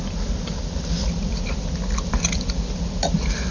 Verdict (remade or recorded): recorded